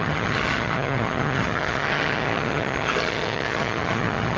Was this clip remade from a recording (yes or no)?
yes